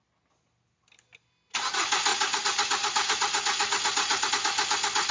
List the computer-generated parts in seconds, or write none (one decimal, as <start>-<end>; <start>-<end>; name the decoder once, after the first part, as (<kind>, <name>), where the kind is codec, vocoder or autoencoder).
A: 2.1-4.3 (vocoder, Vocos)